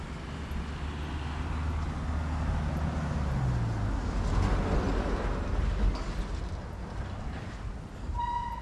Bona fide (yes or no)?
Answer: yes